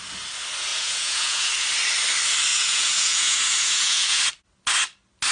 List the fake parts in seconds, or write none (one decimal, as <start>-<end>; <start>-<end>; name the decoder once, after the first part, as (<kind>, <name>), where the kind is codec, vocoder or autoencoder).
0.7-1.5 (vocoder, Vocos); 2.5-4.2